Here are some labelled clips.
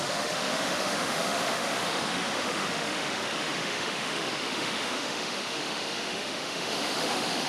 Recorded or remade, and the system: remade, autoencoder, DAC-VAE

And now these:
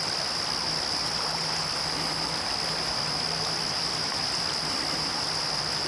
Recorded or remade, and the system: recorded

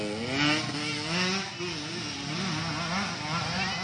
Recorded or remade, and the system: recorded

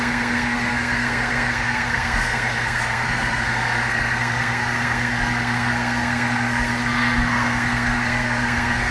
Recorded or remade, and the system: remade, codec, SNAC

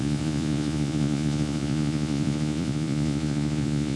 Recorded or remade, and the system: remade, vocoder, Vocos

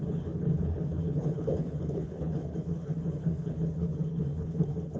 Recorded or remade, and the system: remade, codec, HILCodec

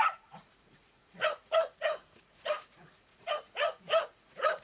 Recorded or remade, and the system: remade, vocoder, Vocos